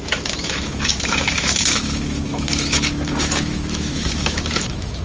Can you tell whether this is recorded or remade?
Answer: remade